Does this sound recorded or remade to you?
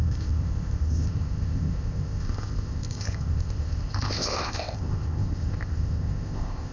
remade